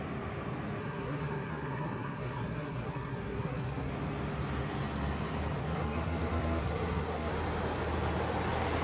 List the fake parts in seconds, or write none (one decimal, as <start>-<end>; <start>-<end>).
0.8-3.9; 5.6-7.3